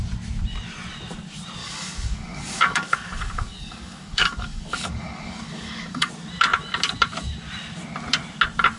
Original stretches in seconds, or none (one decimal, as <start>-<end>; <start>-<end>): 0.0-1.6; 6.1-8.8

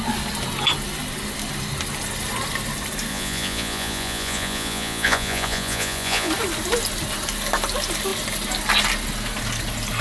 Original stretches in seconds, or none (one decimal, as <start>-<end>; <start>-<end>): 0.0-3.1; 6.3-10.0

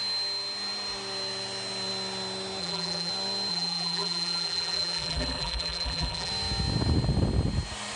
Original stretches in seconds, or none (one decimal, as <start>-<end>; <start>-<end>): 0.0-2.6; 3.1-3.5; 6.3-8.0

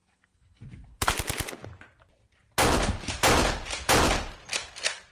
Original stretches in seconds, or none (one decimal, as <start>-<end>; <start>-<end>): 1.1-5.1

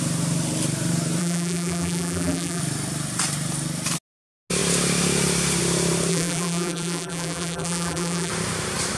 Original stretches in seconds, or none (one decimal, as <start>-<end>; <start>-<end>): 0.0-1.2; 2.6-6.1; 8.3-9.0

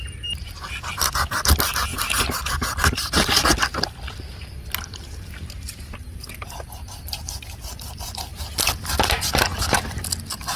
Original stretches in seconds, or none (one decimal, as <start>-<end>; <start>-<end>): 0.0-10.6